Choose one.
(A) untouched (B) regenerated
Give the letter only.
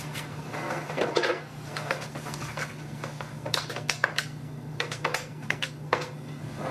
B